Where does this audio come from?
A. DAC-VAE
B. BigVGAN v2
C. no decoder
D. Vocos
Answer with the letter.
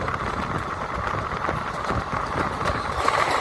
C